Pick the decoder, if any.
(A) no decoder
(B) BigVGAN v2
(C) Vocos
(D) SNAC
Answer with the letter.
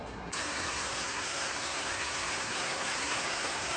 D